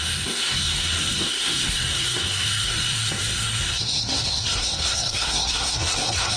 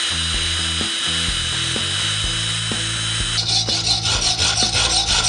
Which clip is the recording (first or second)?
second